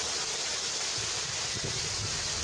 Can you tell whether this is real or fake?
real